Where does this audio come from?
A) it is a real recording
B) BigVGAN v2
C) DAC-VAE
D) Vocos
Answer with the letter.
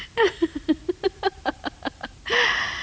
B